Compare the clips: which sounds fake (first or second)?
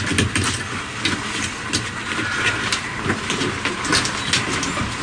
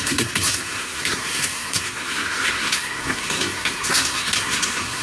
second